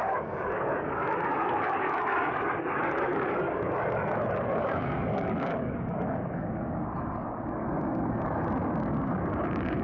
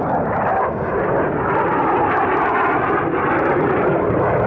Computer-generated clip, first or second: first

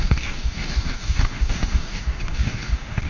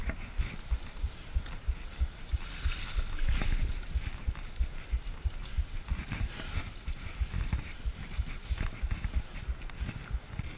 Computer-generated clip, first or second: first